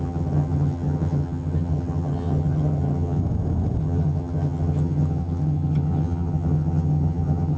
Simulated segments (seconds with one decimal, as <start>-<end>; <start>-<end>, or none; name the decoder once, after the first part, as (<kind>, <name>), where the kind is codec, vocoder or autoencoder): 0.0-3.2 (vocoder, HiFi-GAN); 3.8-7.6

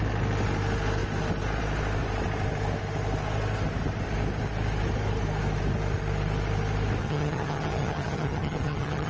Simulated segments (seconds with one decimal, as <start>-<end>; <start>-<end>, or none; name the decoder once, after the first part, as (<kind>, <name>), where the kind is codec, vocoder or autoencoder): 7.0-9.1 (vocoder, HiFi-GAN)